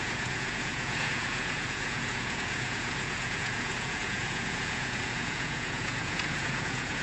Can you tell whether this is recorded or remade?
remade